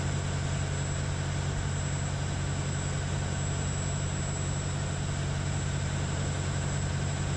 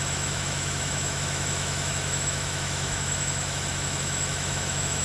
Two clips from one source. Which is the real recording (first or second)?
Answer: first